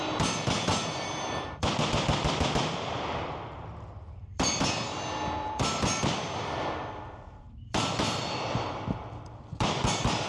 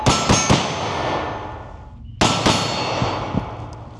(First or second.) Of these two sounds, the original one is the second